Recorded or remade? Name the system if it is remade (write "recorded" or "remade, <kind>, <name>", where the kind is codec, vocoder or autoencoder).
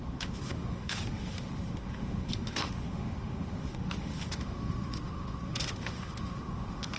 remade, autoencoder, DAC-VAE